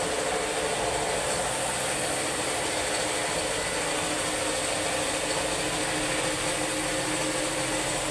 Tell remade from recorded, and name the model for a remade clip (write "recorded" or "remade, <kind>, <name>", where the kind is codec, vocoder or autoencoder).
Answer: recorded